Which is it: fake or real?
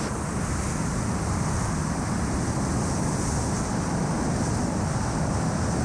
real